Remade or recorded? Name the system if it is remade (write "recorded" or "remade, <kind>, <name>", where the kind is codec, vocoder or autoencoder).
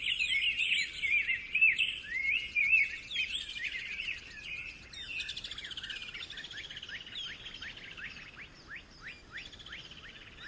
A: recorded